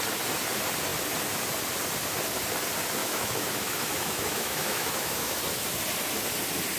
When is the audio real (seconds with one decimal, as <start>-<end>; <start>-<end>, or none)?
0.0-3.0; 5.4-6.8